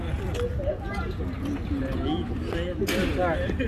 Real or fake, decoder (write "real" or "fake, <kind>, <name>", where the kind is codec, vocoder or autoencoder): real